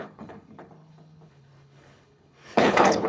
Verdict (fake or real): fake